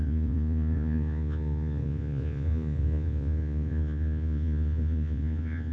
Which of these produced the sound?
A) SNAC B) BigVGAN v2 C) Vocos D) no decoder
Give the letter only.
C